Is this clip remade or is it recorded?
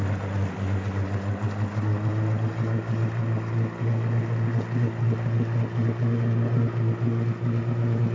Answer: recorded